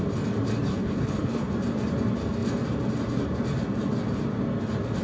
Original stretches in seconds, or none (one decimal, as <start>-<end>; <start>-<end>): 0.0-0.7; 1.5-5.0